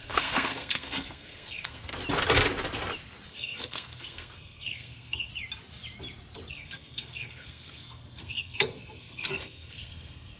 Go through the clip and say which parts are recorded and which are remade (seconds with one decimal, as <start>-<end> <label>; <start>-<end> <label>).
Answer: 0.0-1.9 remade; 1.9-3.3 recorded; 3.3-5.3 remade; 5.3-6.5 recorded; 6.5-10.4 remade